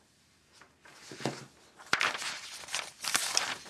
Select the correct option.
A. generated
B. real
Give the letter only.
B